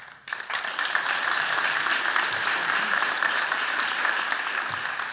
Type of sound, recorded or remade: remade